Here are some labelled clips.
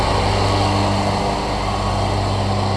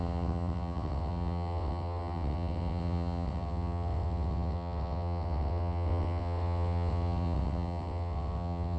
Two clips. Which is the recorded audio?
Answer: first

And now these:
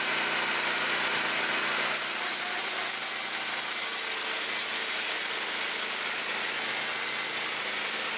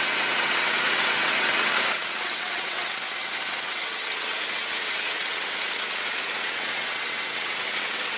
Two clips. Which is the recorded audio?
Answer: first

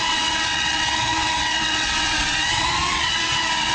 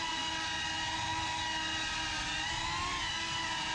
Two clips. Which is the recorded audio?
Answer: second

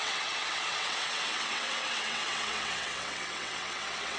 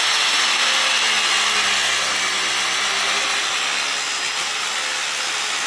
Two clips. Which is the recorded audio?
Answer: second